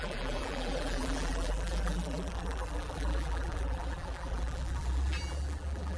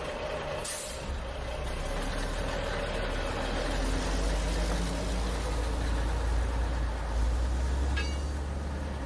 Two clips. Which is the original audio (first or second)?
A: second